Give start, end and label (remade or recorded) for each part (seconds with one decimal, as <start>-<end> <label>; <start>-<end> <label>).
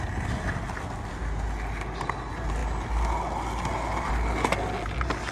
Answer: 0.0-5.3 recorded